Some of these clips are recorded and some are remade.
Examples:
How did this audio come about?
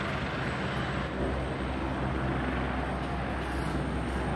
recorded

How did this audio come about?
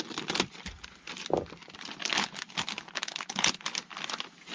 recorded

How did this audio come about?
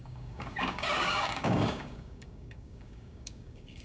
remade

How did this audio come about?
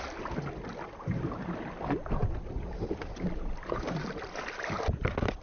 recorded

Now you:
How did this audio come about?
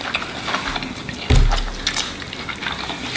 recorded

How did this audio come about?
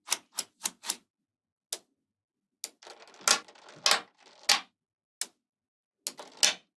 recorded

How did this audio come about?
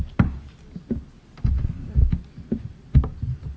recorded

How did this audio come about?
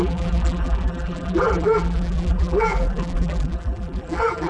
remade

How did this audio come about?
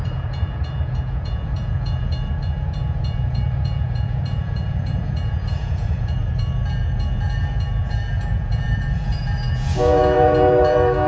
remade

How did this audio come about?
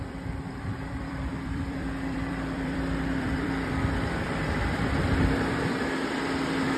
remade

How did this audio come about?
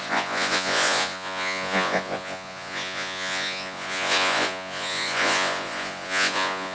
remade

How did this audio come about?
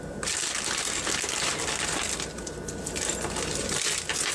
recorded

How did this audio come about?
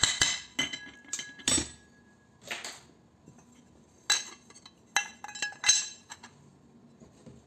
recorded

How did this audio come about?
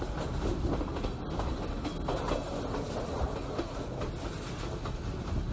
recorded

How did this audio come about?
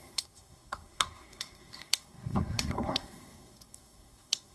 remade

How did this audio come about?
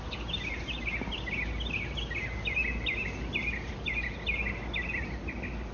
recorded